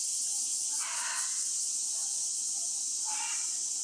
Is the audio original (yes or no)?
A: yes